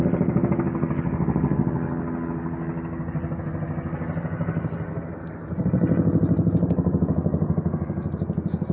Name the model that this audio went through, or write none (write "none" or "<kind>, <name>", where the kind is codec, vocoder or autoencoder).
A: none